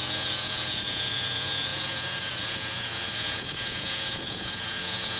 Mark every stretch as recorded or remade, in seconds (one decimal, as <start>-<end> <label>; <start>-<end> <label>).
0.0-5.2 remade